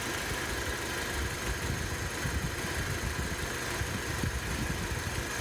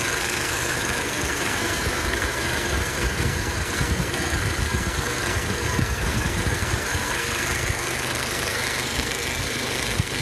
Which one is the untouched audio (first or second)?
first